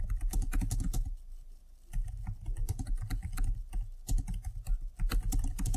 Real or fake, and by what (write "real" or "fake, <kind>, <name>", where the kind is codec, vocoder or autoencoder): real